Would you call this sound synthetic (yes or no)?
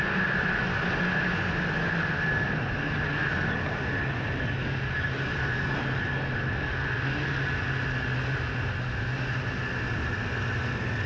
no